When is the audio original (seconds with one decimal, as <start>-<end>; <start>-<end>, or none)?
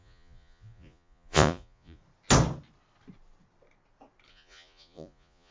2.0-4.3